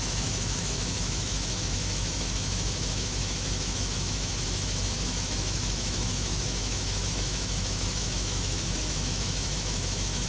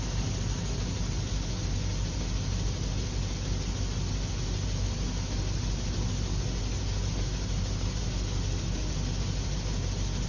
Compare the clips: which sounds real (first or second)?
second